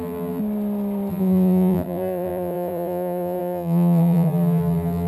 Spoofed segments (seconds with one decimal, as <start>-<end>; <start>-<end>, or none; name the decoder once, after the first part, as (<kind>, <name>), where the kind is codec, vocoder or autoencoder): 0.0-0.4 (vocoder, BigVGAN v2); 1.1-5.1